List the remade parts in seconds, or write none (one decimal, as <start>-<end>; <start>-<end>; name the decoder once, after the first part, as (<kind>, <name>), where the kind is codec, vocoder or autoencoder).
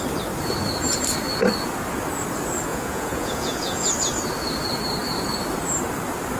2.7-3.9 (vocoder, Vocos)